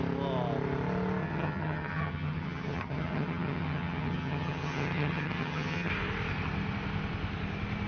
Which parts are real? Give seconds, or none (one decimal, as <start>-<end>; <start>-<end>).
0.0-1.2; 5.9-7.9